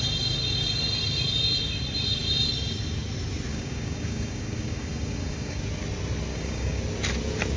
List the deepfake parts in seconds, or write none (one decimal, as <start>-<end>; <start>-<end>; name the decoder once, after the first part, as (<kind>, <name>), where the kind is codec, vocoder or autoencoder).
3.5-5.6 (codec, DAC); 6.3-6.8